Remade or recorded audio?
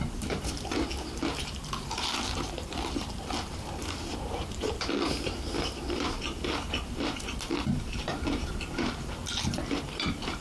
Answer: remade